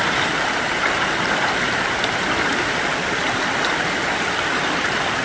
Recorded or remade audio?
remade